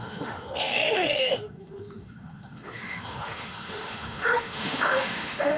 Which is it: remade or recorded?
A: remade